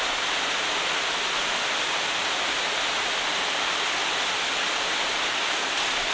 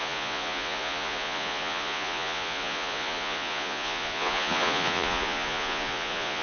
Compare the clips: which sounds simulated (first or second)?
second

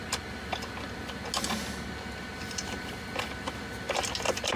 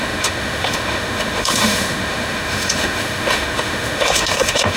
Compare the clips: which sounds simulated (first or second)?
second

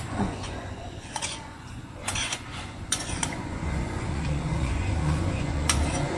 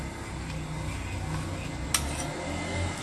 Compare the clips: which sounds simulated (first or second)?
first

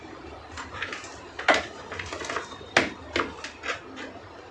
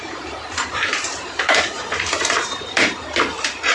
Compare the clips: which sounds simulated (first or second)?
second